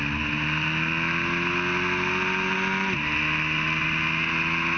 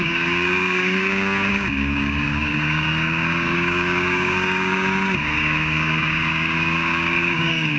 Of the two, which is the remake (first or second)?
second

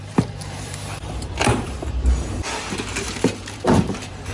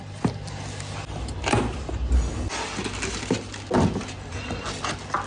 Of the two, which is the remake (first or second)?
first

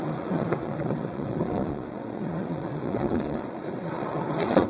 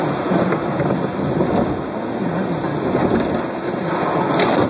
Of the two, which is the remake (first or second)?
first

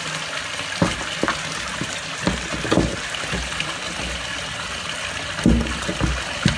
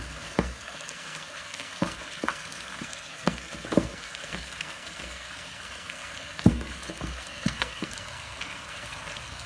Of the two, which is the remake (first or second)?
second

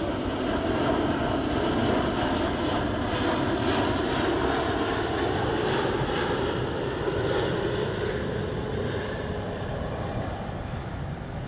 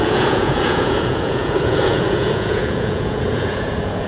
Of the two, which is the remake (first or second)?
second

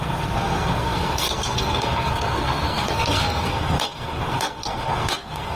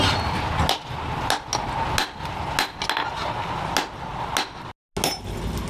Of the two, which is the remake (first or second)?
first